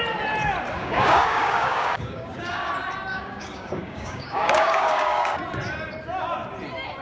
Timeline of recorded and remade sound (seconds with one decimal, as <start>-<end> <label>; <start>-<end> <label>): 0.0-0.8 recorded; 0.8-2.7 remade; 2.7-3.1 recorded; 3.1-5.4 remade; 5.4-7.0 recorded